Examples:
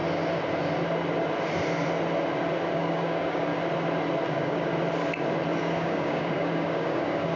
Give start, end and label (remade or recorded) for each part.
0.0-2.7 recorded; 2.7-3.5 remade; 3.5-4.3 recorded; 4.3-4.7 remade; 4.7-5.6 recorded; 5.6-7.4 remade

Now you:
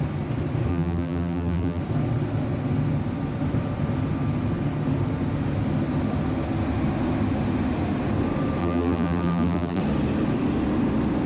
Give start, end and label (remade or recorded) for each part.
0.0-0.7 recorded; 0.7-1.8 remade; 1.8-8.6 recorded; 8.6-9.8 remade; 9.8-11.3 recorded